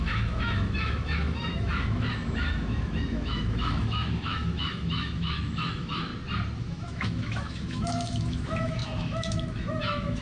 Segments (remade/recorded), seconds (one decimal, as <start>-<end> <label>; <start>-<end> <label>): 0.0-6.1 remade; 6.1-6.6 recorded; 6.6-10.2 remade